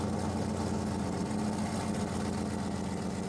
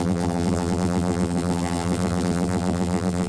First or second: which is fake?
second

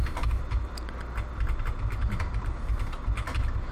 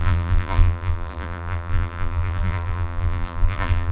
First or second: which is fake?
second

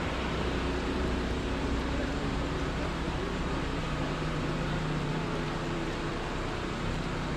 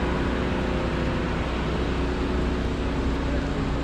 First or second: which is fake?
first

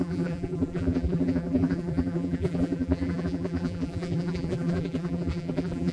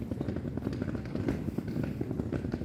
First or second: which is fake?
first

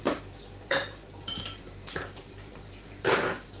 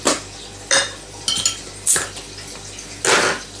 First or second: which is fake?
first